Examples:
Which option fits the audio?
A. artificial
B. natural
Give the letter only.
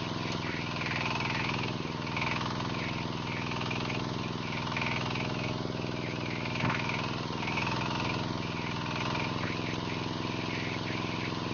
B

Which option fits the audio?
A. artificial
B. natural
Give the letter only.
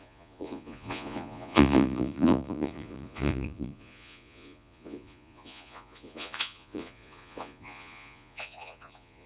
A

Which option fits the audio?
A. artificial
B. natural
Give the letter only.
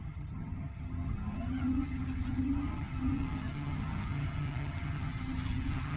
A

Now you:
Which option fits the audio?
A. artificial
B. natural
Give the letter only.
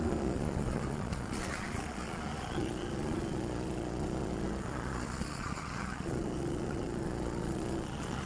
A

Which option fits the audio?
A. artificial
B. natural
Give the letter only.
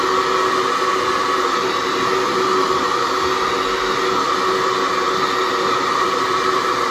B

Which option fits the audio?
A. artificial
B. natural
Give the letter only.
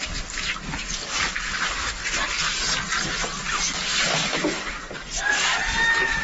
B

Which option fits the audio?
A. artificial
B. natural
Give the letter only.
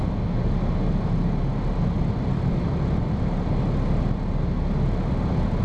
B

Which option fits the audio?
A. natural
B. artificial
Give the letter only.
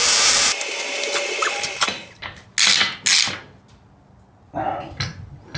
A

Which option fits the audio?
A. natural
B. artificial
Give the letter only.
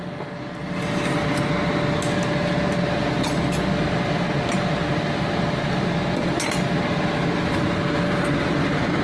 A